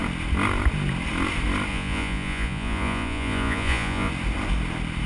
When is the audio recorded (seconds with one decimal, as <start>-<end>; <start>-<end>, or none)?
0.0-1.7; 4.1-5.1